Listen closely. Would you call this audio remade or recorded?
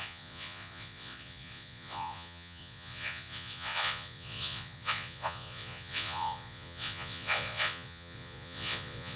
remade